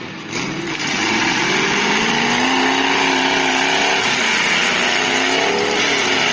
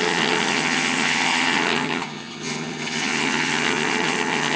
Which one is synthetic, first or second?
second